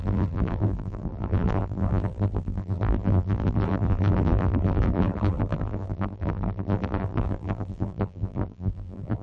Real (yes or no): no